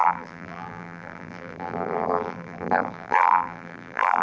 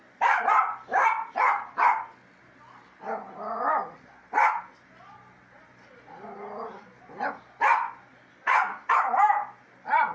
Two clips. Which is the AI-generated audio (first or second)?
first